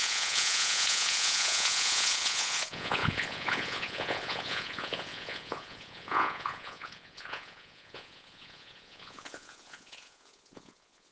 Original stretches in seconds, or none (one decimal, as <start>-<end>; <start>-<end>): none